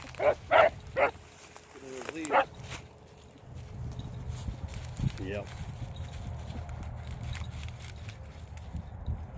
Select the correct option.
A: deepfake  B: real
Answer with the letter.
B